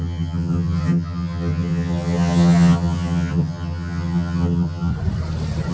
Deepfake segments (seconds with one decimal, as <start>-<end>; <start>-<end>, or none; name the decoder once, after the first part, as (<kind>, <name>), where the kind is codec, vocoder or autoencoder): 0.0-4.9 (vocoder, HiFi-GAN)